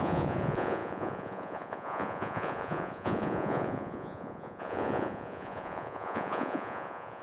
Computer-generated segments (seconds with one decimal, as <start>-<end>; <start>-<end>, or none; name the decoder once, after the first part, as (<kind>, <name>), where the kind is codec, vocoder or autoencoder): 0.0-7.2 (vocoder, Vocos)